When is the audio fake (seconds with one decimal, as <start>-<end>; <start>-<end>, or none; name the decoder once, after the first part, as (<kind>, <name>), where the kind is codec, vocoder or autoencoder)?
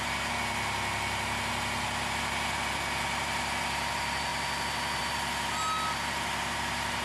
none